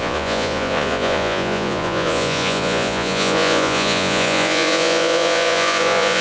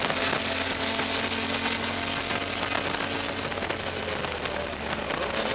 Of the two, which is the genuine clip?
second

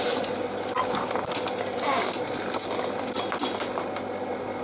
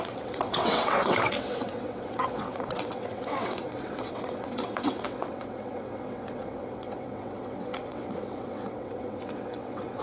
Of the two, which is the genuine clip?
first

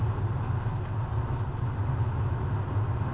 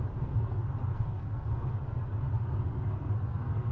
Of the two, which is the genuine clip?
first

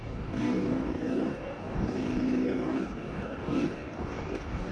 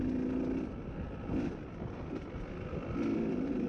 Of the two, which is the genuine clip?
second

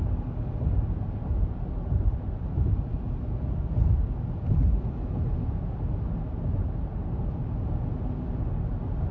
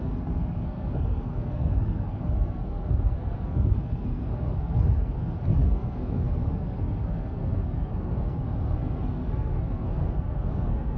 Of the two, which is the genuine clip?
first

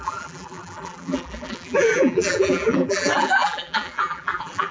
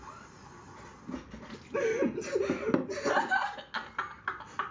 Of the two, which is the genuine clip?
second